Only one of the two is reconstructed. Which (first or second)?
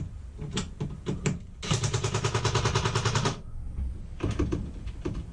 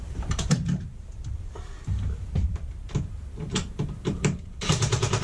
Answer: second